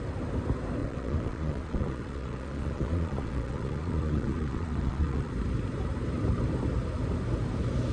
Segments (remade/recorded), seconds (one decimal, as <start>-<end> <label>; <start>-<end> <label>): 0.0-0.8 recorded; 0.8-5.3 remade; 5.3-7.9 recorded